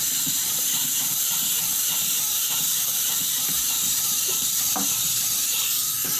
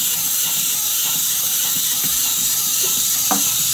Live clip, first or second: second